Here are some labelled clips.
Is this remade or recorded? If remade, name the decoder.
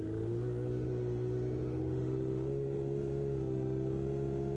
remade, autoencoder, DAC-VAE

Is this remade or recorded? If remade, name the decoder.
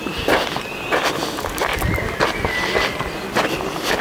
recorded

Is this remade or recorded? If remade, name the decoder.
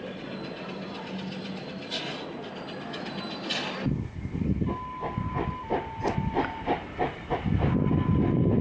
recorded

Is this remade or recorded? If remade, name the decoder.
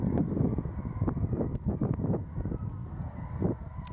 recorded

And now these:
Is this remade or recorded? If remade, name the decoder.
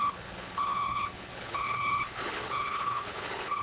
remade, codec, HILCodec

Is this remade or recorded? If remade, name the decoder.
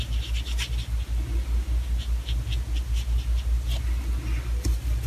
recorded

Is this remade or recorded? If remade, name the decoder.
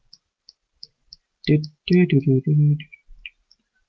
recorded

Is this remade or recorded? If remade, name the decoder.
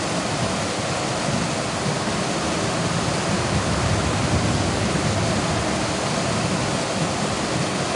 recorded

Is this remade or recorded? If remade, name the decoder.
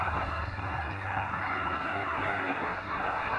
remade, codec, SNAC